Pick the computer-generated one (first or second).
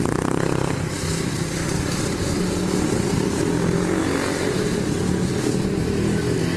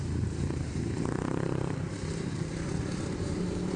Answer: second